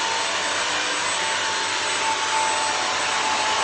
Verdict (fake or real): real